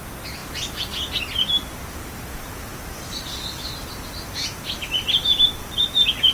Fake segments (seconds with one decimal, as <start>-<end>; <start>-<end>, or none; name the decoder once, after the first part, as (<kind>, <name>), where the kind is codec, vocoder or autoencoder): none